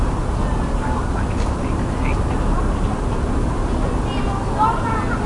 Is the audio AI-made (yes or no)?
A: no